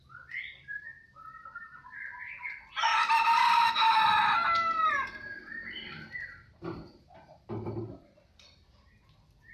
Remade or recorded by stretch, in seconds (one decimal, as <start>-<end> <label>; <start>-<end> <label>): 0.0-2.9 remade; 2.9-3.7 recorded; 3.7-9.5 remade